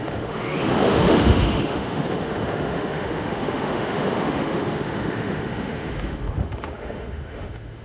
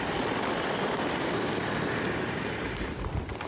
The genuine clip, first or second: second